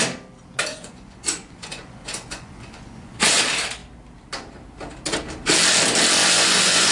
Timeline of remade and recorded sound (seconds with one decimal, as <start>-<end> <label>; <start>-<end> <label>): 0.0-0.7 recorded; 0.7-3.4 remade; 3.4-6.2 recorded; 6.2-6.9 remade